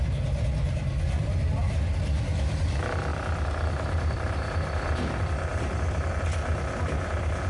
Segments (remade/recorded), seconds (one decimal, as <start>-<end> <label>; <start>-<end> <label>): 0.0-3.1 recorded; 3.1-6.1 remade; 6.1-7.5 recorded